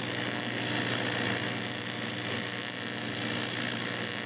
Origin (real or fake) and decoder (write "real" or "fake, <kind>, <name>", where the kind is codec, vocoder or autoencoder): real